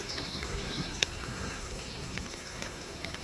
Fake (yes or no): yes